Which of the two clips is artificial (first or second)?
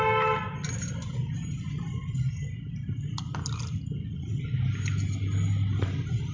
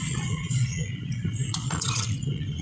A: second